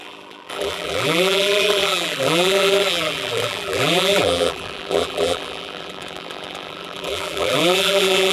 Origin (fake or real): fake